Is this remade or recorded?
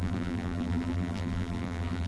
remade